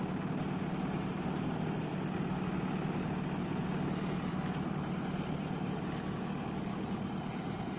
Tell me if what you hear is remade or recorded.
recorded